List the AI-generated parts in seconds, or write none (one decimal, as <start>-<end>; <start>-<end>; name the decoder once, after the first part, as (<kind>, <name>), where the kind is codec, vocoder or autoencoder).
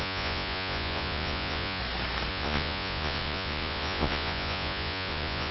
0.0-1.8 (vocoder, Vocos); 2.3-5.5